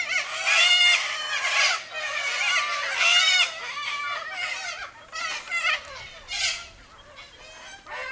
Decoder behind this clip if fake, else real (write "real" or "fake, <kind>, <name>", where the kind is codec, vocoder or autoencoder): real